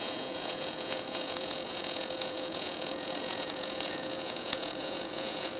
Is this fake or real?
fake